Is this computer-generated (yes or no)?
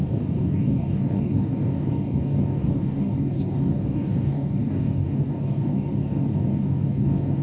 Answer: yes